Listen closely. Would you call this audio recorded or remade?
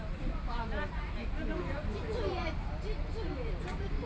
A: remade